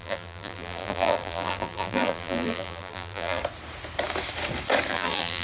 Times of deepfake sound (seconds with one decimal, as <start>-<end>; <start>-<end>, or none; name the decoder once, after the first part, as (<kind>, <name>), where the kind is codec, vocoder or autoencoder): 0.0-3.4 (vocoder, BigVGAN v2); 4.9-5.4